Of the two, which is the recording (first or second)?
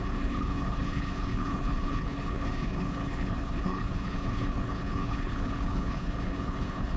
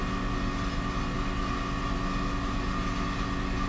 second